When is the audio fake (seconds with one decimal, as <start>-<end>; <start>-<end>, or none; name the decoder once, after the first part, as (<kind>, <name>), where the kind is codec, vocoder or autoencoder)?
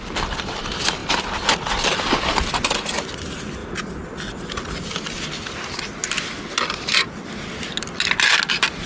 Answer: none